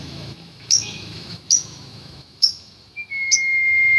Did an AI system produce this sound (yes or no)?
yes